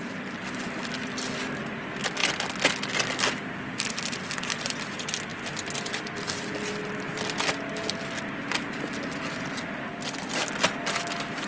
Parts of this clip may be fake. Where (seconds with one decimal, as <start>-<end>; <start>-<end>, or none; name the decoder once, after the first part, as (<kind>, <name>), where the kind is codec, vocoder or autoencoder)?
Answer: none